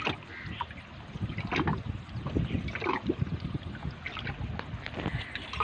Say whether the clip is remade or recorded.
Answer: recorded